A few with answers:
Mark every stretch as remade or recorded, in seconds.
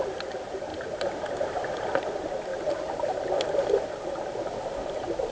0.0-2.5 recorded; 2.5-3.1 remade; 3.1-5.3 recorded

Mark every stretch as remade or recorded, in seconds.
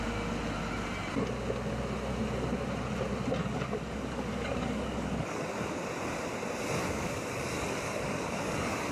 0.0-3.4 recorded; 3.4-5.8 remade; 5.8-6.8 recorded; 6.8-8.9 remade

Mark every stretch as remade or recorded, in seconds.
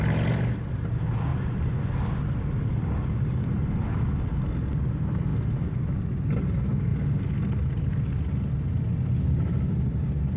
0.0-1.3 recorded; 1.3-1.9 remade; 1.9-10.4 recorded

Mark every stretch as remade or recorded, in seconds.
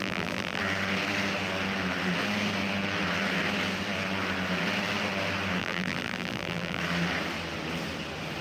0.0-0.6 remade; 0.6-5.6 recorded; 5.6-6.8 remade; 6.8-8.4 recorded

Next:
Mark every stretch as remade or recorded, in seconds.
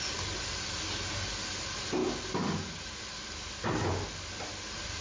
0.0-5.0 recorded